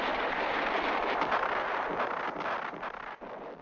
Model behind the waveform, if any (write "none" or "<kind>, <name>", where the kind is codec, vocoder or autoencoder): none